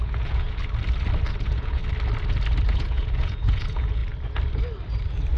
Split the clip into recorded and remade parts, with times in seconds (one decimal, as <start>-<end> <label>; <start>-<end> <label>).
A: 0.0-0.6 remade; 0.6-1.3 recorded; 1.3-1.8 remade; 1.8-2.7 recorded; 2.7-4.0 remade; 4.0-5.4 recorded